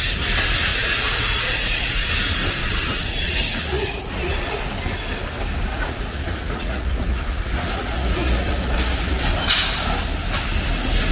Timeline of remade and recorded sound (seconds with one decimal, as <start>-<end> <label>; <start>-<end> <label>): 0.0-0.7 recorded; 0.7-2.1 remade; 2.1-2.6 recorded; 2.6-4.6 remade; 4.6-5.7 recorded; 5.7-9.2 remade; 9.2-11.1 recorded